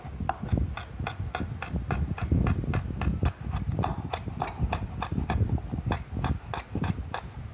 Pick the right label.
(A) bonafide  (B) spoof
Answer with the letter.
A